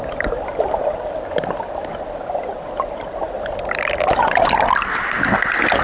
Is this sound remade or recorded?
recorded